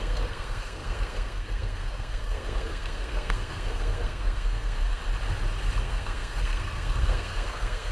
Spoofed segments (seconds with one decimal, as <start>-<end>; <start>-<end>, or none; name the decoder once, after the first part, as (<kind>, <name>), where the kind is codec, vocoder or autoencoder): 0.0-5.0 (codec, SNAC); 5.8-7.9